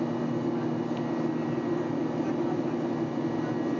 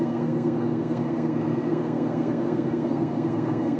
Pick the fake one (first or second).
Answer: second